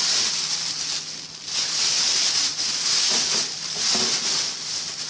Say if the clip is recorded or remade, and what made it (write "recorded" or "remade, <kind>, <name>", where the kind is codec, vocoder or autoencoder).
recorded